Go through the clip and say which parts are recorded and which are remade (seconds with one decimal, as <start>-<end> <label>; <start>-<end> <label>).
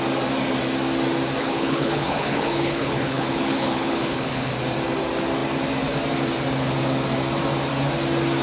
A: 0.0-1.4 recorded; 1.4-4.5 remade; 4.5-8.4 recorded